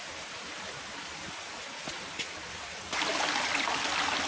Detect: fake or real real